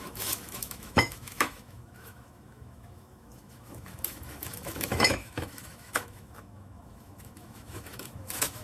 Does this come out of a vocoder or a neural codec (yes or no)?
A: yes